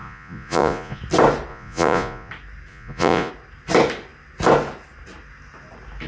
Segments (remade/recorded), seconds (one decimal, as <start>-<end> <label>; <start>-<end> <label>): 0.0-1.0 remade; 1.0-1.5 recorded; 1.5-2.3 remade; 2.3-2.7 recorded; 2.7-3.3 remade; 3.3-6.1 recorded